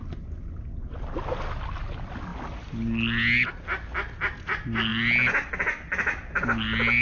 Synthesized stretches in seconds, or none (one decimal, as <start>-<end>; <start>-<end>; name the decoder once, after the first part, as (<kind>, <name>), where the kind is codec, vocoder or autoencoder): none